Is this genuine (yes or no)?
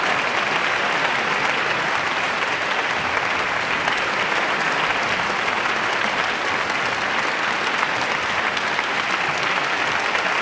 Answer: yes